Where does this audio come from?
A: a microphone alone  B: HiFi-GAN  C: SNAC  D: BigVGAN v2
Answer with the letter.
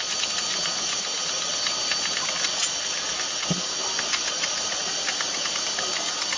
A